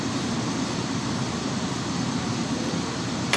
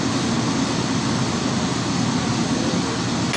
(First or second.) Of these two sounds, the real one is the second